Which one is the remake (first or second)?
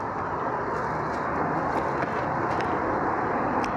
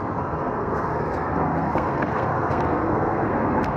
second